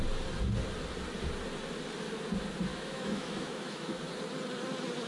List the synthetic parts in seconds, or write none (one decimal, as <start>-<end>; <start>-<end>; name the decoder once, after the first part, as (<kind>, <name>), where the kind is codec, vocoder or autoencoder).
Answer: 2.7-4.1 (autoencoder, DAC-VAE)